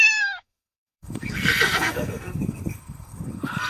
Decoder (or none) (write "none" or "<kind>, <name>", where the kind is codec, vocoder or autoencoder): codec, SNAC